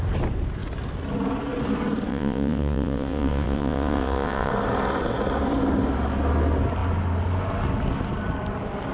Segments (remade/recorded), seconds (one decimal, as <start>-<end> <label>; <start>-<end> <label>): 0.0-2.1 recorded; 2.1-4.5 remade; 4.5-8.9 recorded